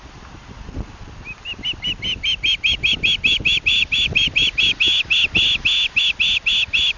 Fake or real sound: real